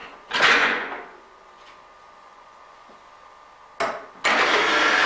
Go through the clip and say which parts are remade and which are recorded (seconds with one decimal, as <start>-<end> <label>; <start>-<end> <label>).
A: 0.0-3.1 remade; 3.1-5.1 recorded

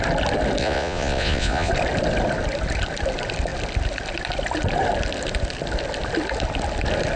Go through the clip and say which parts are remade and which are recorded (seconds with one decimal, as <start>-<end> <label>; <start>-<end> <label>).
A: 0.0-0.6 recorded; 0.6-1.7 remade; 1.7-7.2 recorded

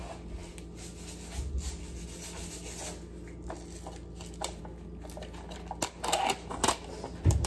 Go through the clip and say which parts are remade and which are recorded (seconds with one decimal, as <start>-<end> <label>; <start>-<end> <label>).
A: 0.0-7.5 recorded

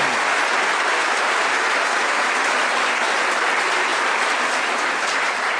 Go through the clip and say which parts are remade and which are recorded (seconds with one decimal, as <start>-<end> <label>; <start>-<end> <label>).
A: 0.0-5.6 recorded

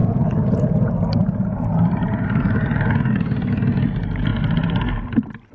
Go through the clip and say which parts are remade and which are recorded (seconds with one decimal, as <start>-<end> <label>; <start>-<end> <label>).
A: 0.0-0.9 remade; 0.9-5.5 recorded

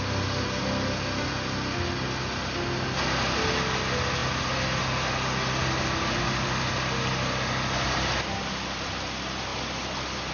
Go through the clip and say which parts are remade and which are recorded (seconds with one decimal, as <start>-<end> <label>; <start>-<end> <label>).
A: 0.0-10.3 recorded